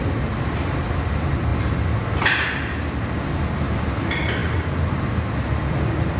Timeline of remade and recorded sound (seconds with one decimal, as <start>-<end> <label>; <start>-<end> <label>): 0.0-6.2 recorded